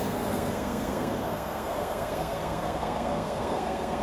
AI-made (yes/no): yes